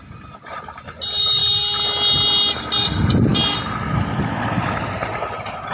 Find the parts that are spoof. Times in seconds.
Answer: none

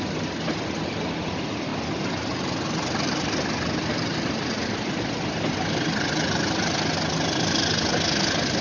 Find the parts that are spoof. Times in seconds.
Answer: none

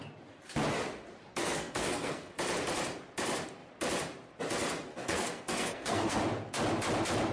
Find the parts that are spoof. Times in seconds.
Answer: 1.3-2.3 (codec, SNAC); 4.9-6.2